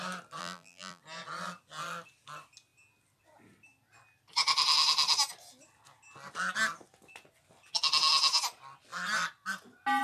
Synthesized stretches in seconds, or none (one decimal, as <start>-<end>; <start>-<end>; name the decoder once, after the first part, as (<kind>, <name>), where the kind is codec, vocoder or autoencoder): 0.4-1.0 (vocoder, BigVGAN v2)